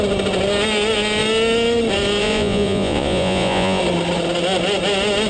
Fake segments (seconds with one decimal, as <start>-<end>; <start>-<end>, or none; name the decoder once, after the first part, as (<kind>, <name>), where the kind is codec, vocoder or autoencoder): 2.2-3.8 (vocoder, Vocos)